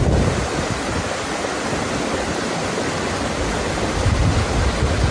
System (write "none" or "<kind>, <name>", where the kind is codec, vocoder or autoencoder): none